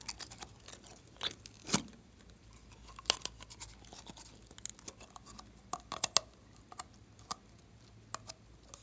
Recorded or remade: recorded